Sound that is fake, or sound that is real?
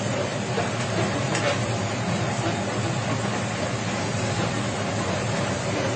real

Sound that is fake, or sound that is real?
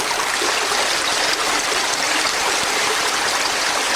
fake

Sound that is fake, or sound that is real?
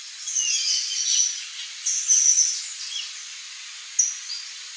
real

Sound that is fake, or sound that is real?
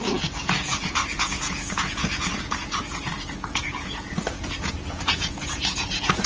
fake